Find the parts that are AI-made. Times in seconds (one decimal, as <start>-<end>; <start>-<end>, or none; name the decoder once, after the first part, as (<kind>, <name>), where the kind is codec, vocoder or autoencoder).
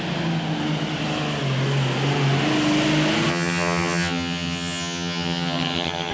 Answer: 3.3-6.1 (vocoder, HiFi-GAN)